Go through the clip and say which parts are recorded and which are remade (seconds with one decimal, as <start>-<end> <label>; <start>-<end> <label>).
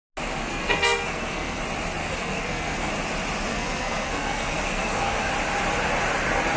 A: 0.0-0.4 recorded; 0.4-1.6 remade; 1.6-2.0 recorded; 2.0-2.9 remade; 2.9-3.5 recorded; 3.5-5.3 remade; 5.3-6.6 recorded